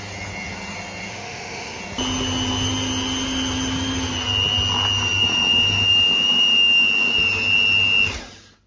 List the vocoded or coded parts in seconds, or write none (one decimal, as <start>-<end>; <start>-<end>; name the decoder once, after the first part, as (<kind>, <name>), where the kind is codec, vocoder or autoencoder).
1.1-1.8 (autoencoder, DAC-VAE)